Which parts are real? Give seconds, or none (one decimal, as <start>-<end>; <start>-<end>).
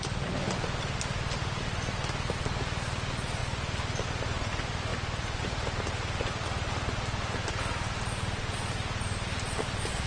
0.0-10.1